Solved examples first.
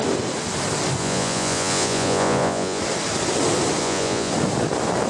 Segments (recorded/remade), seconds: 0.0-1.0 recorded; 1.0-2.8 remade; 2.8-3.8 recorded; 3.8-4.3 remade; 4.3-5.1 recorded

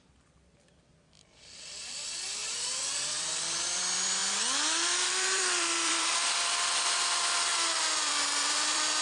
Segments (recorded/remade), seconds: 0.0-9.0 remade

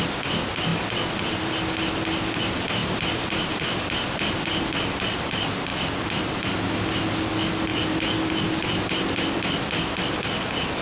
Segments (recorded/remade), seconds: 0.0-0.7 recorded; 0.7-1.5 remade; 1.5-2.8 recorded; 2.8-4.6 remade; 4.6-5.7 recorded; 5.7-6.6 remade; 6.6-7.7 recorded; 7.7-8.8 remade; 8.8-10.8 recorded